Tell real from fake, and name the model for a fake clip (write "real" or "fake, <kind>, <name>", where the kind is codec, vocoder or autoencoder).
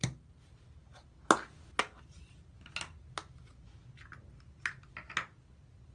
real